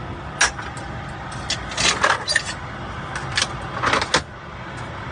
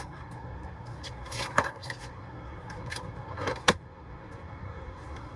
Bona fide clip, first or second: first